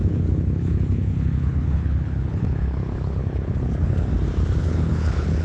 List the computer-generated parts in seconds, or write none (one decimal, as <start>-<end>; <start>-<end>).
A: 0.0-4.1; 4.6-5.4